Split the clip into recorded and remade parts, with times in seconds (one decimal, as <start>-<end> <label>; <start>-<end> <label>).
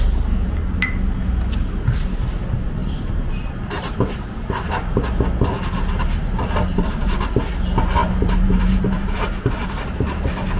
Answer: 0.0-2.8 recorded; 2.8-4.1 remade; 4.1-8.0 recorded; 8.0-9.2 remade; 9.2-10.6 recorded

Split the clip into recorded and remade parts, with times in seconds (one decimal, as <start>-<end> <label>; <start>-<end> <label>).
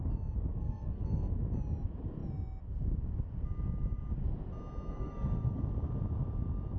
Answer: 0.0-0.5 recorded; 0.5-1.3 remade; 1.3-4.9 recorded; 4.9-5.6 remade; 5.6-6.8 recorded